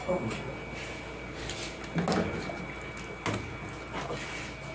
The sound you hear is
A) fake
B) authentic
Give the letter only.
B